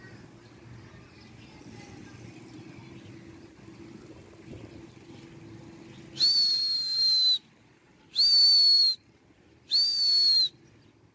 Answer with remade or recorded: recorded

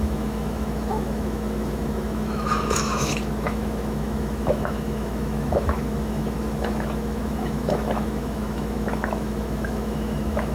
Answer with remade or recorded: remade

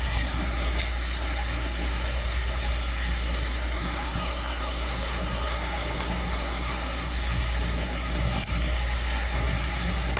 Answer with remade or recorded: remade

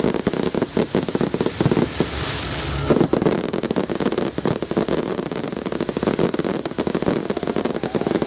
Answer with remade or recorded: recorded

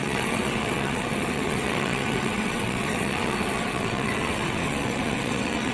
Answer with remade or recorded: remade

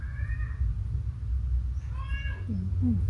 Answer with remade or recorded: recorded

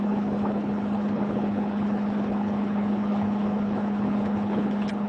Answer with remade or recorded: remade